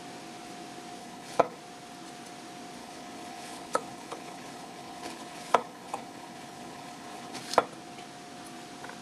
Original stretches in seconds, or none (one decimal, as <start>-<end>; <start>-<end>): 0.0-1.0; 1.6-2.8; 7.4-9.0